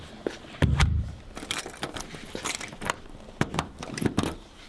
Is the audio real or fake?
fake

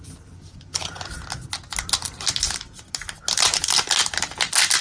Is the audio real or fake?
real